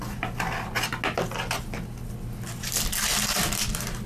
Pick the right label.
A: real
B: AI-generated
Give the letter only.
A